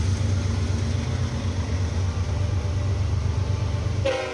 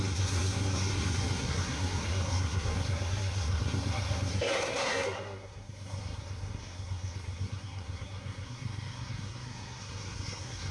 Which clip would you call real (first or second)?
first